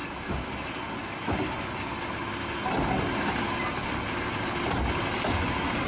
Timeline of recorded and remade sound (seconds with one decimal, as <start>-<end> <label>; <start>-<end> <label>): 0.0-5.9 recorded